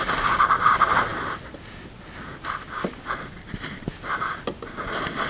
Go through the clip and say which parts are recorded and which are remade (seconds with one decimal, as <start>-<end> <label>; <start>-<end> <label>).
0.0-5.3 recorded